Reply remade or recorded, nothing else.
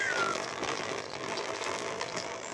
remade